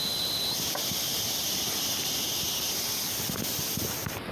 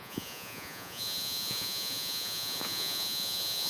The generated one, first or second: second